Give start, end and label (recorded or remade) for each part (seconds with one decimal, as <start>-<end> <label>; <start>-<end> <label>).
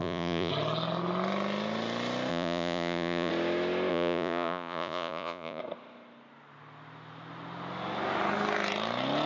0.0-0.5 remade; 0.5-2.3 recorded; 2.3-3.3 remade; 3.3-3.9 recorded; 3.9-5.6 remade; 5.6-9.3 recorded